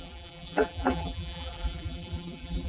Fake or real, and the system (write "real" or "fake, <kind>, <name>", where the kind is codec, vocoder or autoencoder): fake, vocoder, BigVGAN v2